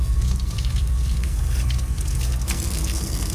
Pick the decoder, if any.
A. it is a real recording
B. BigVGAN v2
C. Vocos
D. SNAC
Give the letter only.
D